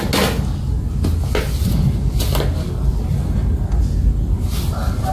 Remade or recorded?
recorded